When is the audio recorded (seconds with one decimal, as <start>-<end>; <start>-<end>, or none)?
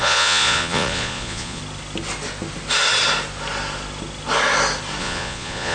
1.6-5.0